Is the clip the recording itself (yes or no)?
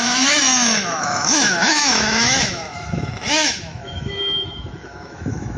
no